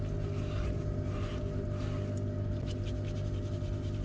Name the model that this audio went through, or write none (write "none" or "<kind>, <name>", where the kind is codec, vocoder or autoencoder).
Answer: none